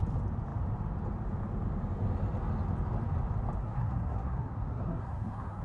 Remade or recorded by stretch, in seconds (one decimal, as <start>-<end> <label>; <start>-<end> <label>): 0.0-3.6 recorded; 3.6-5.6 remade